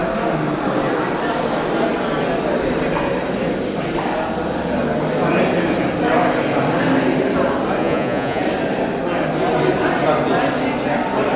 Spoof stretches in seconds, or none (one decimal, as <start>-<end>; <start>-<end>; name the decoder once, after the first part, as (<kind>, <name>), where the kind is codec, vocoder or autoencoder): 7.8-8.4 (vocoder, Vocos)